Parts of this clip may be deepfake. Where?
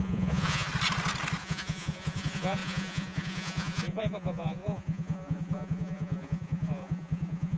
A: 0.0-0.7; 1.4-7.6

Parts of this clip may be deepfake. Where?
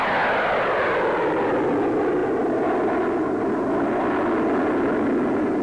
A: none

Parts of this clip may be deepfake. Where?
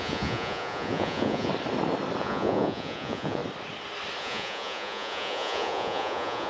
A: 0.0-1.5; 2.2-3.4; 4.2-6.5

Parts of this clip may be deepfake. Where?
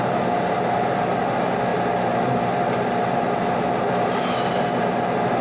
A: none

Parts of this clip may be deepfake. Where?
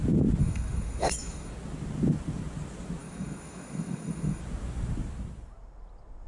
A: 0.4-1.5; 3.0-4.4